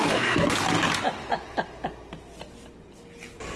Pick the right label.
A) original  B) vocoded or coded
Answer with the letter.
A